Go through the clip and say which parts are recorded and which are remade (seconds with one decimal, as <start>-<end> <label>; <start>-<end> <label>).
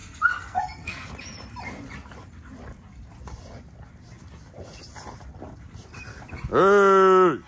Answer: 0.0-1.1 remade; 1.1-7.5 recorded